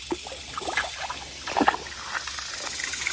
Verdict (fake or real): real